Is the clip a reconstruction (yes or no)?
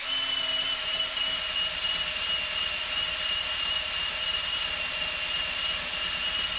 no